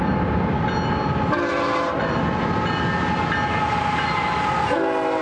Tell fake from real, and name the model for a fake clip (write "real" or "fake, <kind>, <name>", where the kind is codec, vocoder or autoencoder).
real